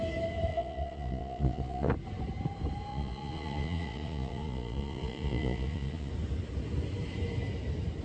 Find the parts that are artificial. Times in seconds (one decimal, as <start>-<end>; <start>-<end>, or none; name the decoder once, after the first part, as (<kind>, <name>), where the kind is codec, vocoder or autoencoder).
0.5-1.9 (vocoder, Vocos); 2.9-6.1